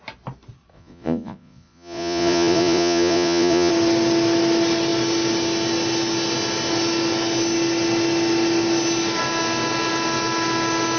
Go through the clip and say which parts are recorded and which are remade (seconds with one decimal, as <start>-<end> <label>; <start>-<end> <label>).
0.0-0.7 recorded; 0.7-3.7 remade; 3.7-11.0 recorded